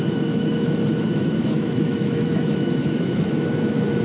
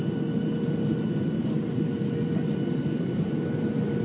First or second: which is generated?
first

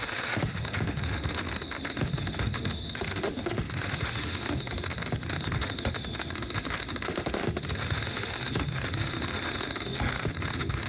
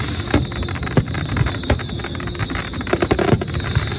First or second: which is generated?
first